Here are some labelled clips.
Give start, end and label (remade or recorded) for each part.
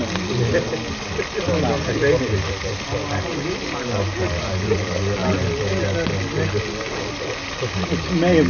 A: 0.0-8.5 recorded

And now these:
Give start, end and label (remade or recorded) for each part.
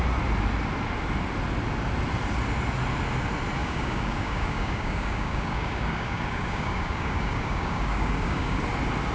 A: 0.0-3.6 recorded; 3.6-8.6 remade; 8.6-9.1 recorded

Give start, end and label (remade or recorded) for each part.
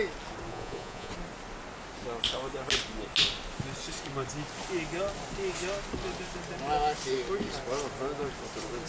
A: 0.0-0.5 recorded; 0.5-1.1 remade; 1.1-8.9 recorded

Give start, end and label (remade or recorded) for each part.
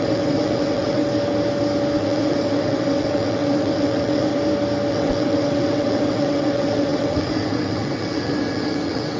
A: 0.0-1.0 remade; 1.0-2.0 recorded; 2.0-4.3 remade; 4.3-4.9 recorded; 4.9-9.2 remade